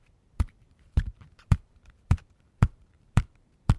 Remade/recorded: remade